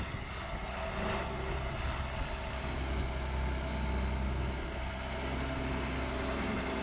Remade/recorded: recorded